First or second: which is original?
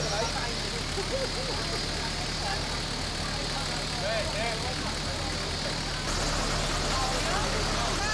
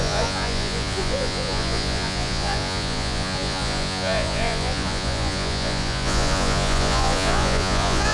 first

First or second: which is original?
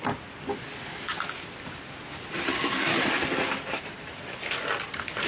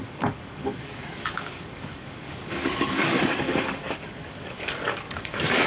first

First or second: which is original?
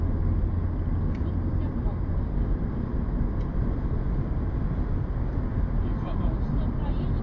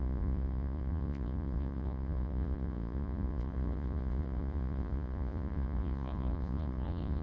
first